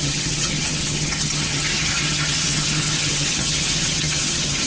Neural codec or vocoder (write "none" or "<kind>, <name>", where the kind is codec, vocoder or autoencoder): vocoder, HiFi-GAN